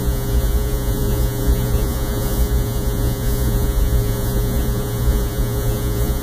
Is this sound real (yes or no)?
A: no